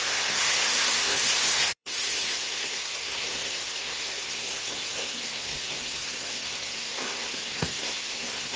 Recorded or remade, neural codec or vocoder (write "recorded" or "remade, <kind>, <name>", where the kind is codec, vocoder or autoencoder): remade, codec, SNAC